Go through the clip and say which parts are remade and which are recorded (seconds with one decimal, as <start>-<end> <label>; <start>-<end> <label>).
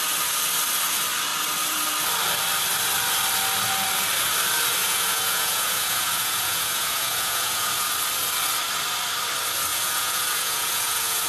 0.0-4.8 recorded; 4.8-7.7 remade; 7.7-9.7 recorded; 9.7-11.3 remade